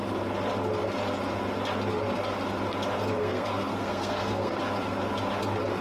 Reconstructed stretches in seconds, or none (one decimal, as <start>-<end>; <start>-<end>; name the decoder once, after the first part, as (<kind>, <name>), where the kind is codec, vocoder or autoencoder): 3.2-4.6 (codec, SNAC)